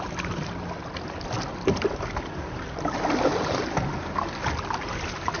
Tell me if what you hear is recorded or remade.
recorded